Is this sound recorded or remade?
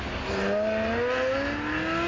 recorded